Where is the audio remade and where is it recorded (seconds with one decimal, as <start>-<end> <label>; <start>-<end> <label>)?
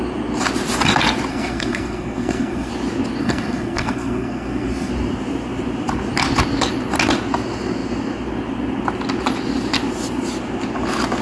0.0-1.3 recorded; 1.3-2.7 remade; 2.7-3.2 recorded; 3.2-4.9 remade; 4.9-11.2 recorded